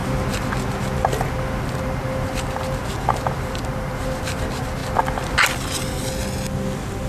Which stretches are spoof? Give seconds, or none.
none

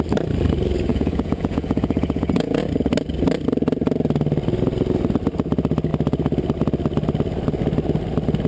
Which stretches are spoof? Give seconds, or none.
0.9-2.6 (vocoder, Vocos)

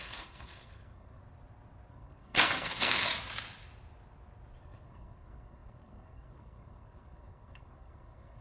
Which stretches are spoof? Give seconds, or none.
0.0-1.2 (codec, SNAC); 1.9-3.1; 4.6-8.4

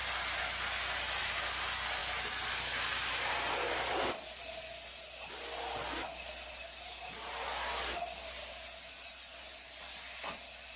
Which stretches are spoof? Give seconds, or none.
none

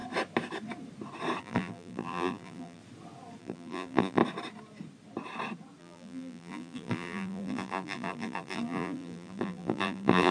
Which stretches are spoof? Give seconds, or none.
1.4-2.8 (vocoder, BigVGAN v2); 3.4-4.2; 5.8-10.3

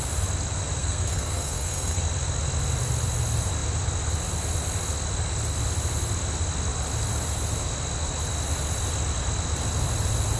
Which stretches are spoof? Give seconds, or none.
0.8-2.0 (codec, SNAC)

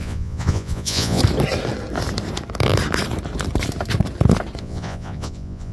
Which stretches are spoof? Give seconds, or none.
0.0-1.2 (vocoder, Vocos); 4.6-5.7